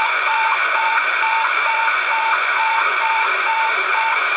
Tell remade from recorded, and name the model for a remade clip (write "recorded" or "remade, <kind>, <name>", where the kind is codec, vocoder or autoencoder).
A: remade, vocoder, Vocos